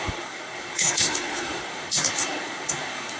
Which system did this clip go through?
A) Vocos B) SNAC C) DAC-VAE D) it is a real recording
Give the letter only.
B